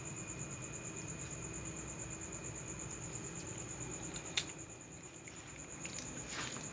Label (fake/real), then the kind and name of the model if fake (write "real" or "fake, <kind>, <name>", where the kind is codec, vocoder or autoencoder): real